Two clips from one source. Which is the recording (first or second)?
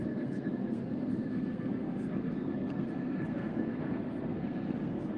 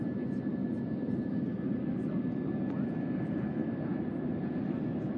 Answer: second